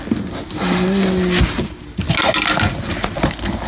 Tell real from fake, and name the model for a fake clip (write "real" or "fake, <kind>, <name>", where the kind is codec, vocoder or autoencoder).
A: real